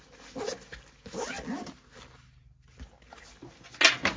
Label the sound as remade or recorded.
recorded